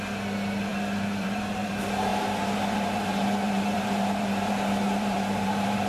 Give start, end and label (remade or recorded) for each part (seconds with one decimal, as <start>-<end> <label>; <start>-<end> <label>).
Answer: 0.0-0.7 recorded; 0.7-1.7 remade; 1.7-2.1 recorded; 2.1-5.9 remade